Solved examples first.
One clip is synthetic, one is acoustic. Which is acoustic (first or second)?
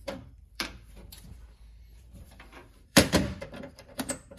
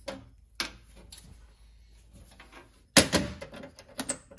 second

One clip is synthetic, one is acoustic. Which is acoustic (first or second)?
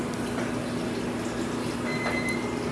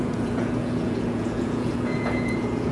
first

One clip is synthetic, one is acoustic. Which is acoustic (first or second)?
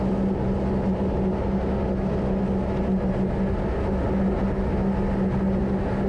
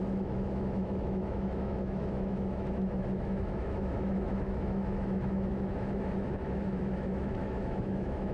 first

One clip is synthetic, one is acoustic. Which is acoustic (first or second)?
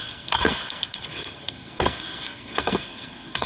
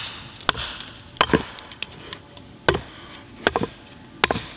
second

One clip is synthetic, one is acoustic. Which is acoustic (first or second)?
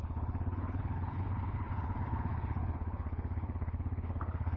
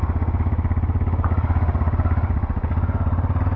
second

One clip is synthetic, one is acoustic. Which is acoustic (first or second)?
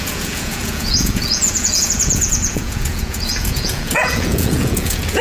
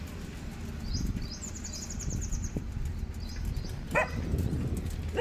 second